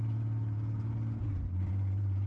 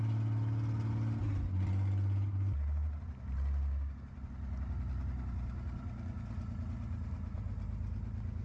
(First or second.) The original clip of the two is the second